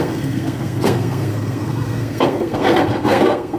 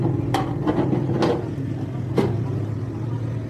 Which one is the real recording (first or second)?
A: second